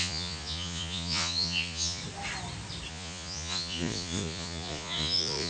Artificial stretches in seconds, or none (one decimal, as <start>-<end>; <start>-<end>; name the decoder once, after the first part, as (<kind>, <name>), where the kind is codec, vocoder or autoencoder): 0.0-2.0 (vocoder, Vocos); 2.9-5.5